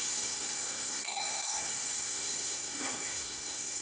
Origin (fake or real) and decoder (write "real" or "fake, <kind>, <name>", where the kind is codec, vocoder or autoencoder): fake, codec, SNAC